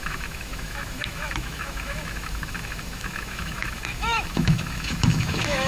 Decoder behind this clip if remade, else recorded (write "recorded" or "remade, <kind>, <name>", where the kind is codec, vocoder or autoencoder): remade, autoencoder, DAC-VAE